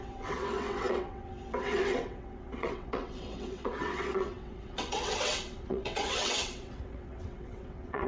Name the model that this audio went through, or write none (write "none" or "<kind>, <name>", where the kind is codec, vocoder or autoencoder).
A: vocoder, WaveNeXt